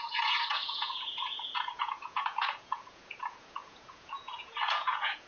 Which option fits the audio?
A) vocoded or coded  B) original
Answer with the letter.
A